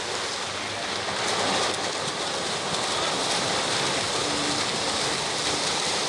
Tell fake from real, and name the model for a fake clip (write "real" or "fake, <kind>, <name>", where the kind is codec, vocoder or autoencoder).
real